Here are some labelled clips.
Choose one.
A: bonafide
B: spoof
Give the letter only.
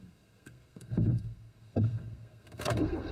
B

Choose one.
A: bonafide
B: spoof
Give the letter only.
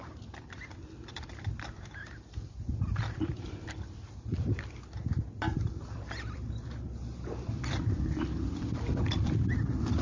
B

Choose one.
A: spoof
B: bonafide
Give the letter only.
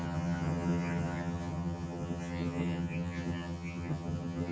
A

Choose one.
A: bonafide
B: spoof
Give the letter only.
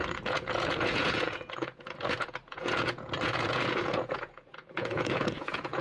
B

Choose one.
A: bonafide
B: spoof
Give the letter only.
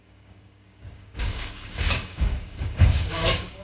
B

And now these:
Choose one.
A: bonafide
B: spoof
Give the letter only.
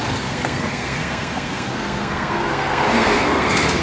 B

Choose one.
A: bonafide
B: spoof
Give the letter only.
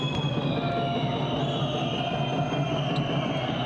A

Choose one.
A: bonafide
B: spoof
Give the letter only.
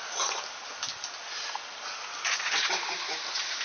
A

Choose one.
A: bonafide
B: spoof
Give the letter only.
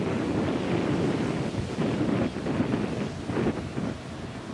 A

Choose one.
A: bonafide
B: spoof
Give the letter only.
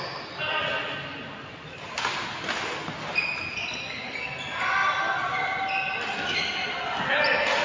A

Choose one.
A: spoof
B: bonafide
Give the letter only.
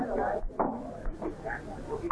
B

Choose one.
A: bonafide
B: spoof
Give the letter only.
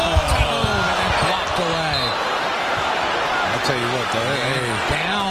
A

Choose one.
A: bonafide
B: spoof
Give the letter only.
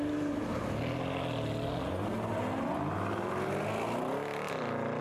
A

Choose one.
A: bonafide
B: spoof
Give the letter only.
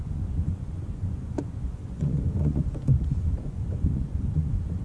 B